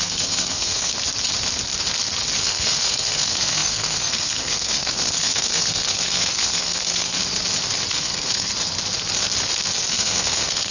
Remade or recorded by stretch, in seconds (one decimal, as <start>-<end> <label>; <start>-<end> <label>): 0.0-0.9 remade; 0.9-2.4 recorded; 2.4-7.2 remade; 7.2-7.9 recorded; 7.9-8.5 remade; 8.5-9.9 recorded; 9.9-10.7 remade